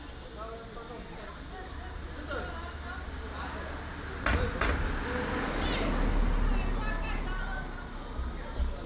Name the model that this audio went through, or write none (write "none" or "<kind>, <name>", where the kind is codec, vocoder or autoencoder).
none